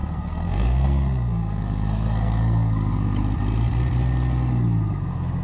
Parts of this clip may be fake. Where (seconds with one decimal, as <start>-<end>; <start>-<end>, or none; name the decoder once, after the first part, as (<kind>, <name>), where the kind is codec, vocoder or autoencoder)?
0.0-3.2 (codec, SNAC)